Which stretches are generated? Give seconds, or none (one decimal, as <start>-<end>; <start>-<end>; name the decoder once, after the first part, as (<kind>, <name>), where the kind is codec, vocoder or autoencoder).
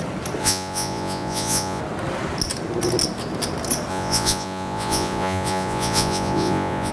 0.4-1.8 (vocoder, Vocos); 3.9-6.9